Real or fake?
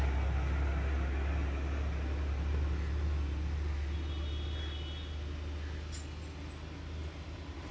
real